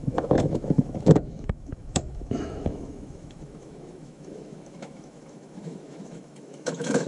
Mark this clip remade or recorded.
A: remade